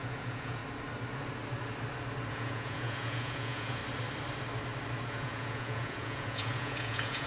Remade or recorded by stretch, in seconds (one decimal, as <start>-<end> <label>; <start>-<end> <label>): 0.0-0.6 remade; 0.6-2.3 recorded; 2.3-3.8 remade; 3.8-5.1 recorded; 5.1-7.3 remade